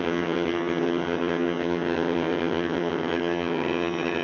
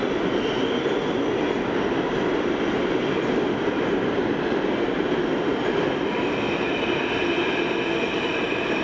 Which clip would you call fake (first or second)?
first